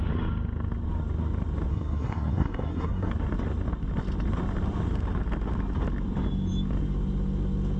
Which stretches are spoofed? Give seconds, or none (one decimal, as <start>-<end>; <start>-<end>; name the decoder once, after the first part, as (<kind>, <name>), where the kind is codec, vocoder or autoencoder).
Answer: 1.7-3.1 (codec, SNAC)